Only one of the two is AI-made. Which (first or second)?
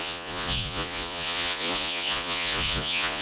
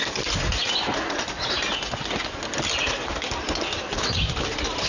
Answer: first